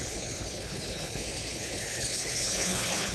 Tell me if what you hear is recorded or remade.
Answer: remade